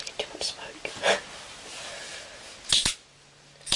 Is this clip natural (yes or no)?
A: yes